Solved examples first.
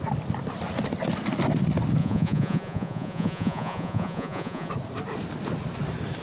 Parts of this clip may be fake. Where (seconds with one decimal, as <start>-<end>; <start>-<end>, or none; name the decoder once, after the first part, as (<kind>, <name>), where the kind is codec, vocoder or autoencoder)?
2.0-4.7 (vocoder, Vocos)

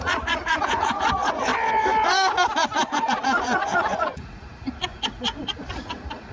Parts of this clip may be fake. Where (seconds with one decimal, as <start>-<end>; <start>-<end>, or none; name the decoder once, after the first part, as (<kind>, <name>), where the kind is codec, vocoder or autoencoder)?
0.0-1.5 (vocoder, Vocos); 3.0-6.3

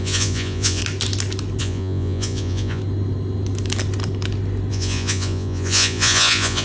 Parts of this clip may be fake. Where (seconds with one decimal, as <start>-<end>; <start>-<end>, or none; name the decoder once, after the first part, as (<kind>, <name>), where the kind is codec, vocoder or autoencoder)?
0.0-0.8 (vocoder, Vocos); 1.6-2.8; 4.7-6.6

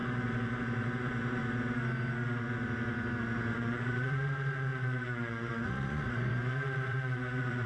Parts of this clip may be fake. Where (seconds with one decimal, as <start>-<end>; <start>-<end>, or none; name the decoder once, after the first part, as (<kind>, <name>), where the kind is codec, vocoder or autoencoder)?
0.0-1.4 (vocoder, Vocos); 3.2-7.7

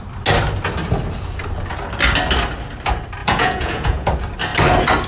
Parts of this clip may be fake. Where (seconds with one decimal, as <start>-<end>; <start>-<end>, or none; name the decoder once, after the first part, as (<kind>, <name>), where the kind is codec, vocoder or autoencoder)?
3.2-4.1 (vocoder, Vocos)

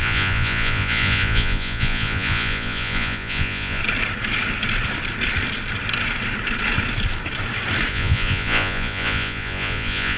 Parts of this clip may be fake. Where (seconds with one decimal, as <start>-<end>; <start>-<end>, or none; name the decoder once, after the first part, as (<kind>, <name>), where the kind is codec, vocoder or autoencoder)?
0.0-3.8 (vocoder, Vocos); 7.9-10.2

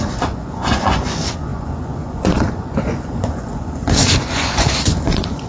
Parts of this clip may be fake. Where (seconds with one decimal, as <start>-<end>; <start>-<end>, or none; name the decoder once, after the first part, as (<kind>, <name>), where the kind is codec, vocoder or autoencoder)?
0.0-5.5 (vocoder, Vocos)

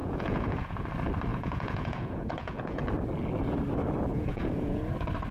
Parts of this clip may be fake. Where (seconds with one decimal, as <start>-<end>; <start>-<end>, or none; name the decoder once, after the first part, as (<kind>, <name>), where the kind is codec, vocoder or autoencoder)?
0.0-0.8 (vocoder, Vocos); 1.3-2.8; 4.1-4.8